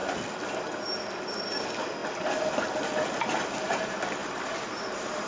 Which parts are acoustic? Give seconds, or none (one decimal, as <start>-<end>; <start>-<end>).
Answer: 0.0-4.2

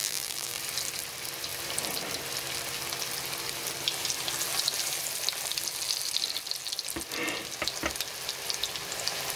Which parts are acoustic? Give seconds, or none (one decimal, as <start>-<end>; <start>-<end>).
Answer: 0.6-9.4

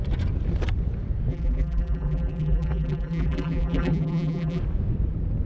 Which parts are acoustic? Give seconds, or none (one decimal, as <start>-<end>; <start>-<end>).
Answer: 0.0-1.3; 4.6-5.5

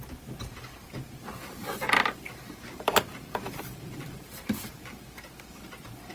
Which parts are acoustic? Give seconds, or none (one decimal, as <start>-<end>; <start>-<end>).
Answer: 0.0-1.2; 4.9-6.1

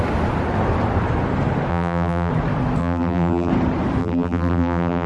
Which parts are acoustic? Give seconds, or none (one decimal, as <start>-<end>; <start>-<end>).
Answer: 0.0-1.7; 2.3-2.8; 3.5-4.0

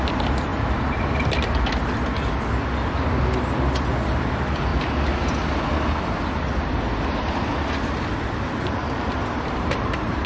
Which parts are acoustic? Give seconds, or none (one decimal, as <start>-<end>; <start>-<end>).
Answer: 0.5-4.2; 4.7-8.6

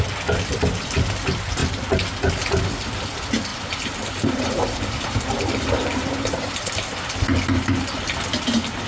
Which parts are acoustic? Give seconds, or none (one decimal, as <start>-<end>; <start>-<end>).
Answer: 0.0-3.5; 6.7-8.9